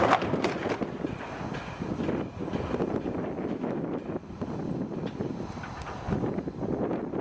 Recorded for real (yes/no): yes